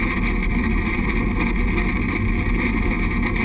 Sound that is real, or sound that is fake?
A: real